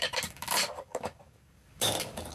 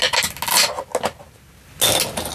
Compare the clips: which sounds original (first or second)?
second